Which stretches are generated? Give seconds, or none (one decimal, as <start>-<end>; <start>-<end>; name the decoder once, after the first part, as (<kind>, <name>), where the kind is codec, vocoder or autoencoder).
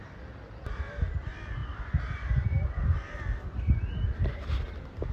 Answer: none